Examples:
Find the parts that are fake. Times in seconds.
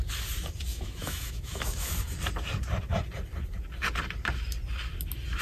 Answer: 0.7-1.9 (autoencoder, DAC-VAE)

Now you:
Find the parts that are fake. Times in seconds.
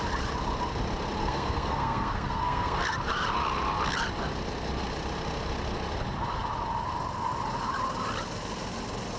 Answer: 1.2-2.8 (codec, SNAC)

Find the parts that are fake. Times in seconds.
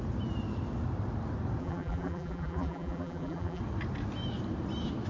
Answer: 1.6-3.6 (vocoder, BigVGAN v2)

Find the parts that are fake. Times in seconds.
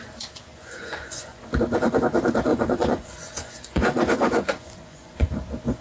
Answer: 0.5-1.4 (vocoder, Vocos); 2.5-5.3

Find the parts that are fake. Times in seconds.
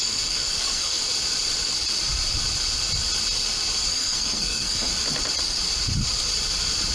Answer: 0.0-1.0 (codec, SNAC); 3.9-4.9